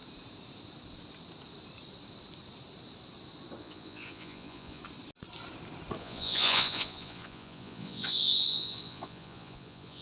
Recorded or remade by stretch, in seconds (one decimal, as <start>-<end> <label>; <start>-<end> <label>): 0.0-3.6 recorded; 3.6-4.8 remade; 4.8-6.0 recorded; 6.0-10.0 remade